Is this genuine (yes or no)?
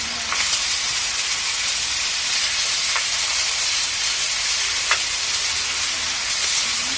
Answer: yes